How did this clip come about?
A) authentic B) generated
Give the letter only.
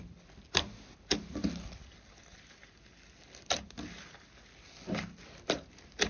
A